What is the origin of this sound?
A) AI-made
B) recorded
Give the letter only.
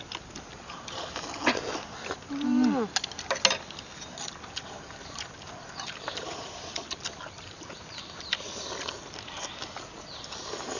B